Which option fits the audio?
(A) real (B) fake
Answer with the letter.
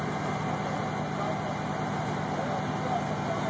A